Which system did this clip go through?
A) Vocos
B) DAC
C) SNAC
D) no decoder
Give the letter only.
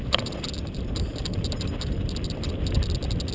D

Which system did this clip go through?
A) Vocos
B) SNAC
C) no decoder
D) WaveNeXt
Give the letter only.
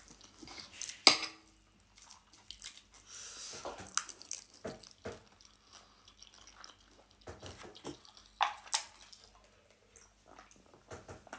C